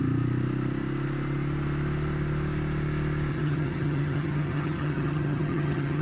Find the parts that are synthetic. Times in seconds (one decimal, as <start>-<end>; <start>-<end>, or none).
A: 3.3-6.0